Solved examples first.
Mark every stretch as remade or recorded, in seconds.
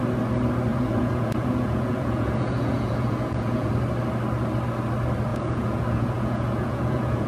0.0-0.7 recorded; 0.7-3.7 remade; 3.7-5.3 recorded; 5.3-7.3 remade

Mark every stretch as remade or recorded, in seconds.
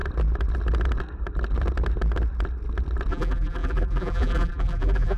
0.0-3.1 recorded; 3.1-5.2 remade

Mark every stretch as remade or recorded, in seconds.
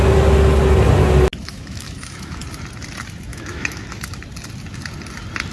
0.0-1.4 recorded; 1.4-2.4 remade; 2.4-3.3 recorded; 3.3-4.2 remade; 4.2-5.5 recorded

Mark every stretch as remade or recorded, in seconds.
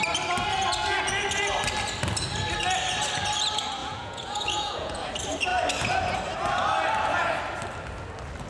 0.0-3.8 recorded; 3.8-5.1 remade; 5.1-8.5 recorded